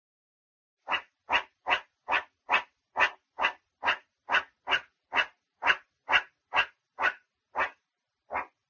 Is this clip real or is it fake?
real